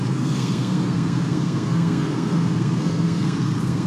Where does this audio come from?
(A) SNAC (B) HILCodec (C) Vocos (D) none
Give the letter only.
A